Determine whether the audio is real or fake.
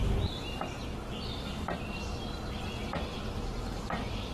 fake